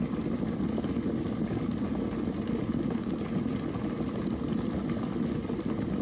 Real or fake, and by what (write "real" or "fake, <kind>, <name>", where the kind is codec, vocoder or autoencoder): real